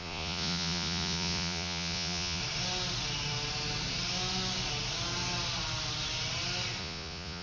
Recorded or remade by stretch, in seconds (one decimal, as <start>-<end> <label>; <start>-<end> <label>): 0.0-2.4 remade; 2.4-6.8 recorded; 6.8-7.4 remade